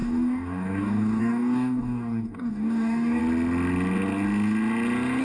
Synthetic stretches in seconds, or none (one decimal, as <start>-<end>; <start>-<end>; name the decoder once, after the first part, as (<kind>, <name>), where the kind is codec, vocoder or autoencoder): 0.0-3.2 (codec, DAC)